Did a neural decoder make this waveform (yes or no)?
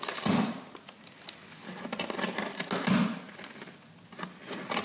no